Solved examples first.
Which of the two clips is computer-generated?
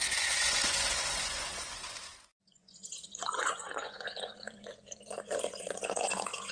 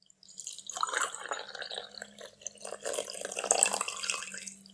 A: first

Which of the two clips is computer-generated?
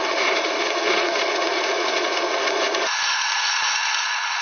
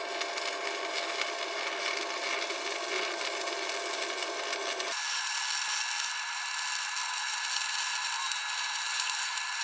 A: first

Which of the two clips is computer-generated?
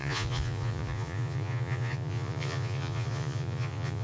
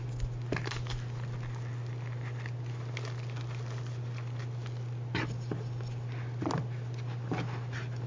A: first